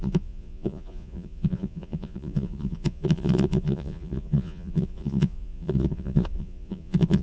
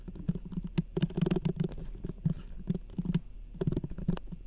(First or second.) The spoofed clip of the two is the first